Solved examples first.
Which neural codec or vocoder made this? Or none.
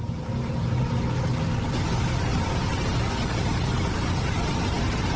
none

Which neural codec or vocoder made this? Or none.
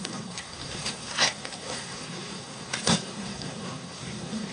codec, SNAC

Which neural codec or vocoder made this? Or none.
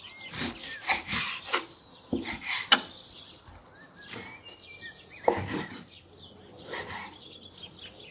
none